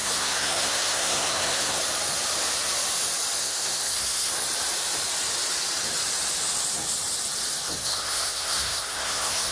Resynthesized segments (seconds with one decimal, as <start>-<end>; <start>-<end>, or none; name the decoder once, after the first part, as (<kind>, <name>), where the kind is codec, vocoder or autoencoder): 0.0-1.8 (codec, SNAC); 3.4-4.3; 7.8-9.5